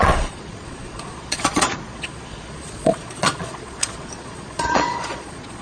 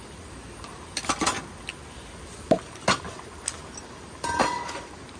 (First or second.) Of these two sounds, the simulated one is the first